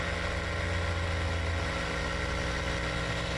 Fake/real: real